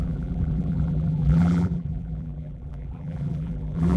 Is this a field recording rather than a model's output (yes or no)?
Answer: no